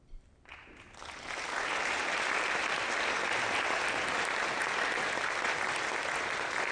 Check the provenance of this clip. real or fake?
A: real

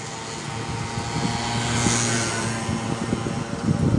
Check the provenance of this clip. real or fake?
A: real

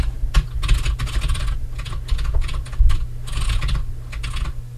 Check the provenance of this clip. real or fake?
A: real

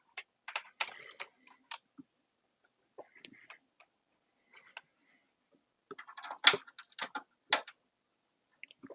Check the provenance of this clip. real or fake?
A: real